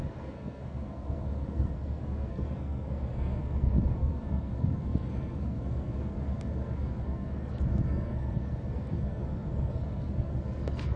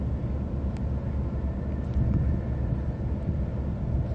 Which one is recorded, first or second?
second